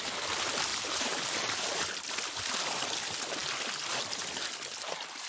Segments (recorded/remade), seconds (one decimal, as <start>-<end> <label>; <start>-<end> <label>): 0.0-0.7 recorded; 0.7-2.1 remade; 2.1-5.3 recorded